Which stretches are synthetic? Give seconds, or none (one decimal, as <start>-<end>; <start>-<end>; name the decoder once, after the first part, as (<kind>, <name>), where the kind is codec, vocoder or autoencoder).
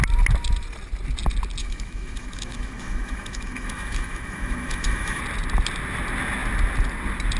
1.6-5.2 (autoencoder, DAC-VAE)